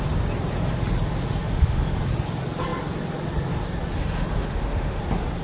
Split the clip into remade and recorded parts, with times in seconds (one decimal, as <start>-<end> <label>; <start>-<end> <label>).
0.0-1.4 recorded; 1.4-2.0 remade; 2.0-4.0 recorded; 4.0-5.0 remade; 5.0-5.4 recorded